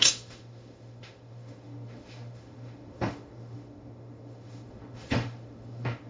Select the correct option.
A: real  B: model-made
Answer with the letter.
B